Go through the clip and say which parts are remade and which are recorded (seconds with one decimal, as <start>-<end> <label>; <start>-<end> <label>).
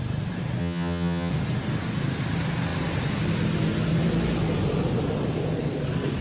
0.0-0.6 recorded; 0.6-1.3 remade; 1.3-6.2 recorded